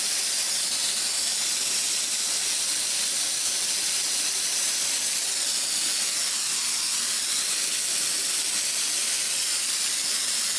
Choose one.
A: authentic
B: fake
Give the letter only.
A